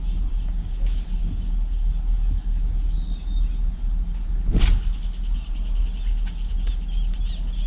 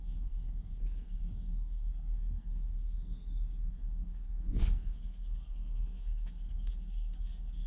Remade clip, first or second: second